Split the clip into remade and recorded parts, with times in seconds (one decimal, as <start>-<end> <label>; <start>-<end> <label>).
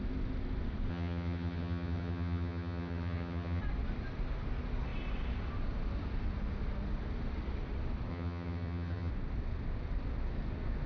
0.0-0.9 recorded; 0.9-3.6 remade; 3.6-8.1 recorded; 8.1-9.1 remade; 9.1-10.9 recorded